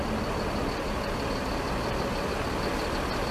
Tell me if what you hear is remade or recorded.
recorded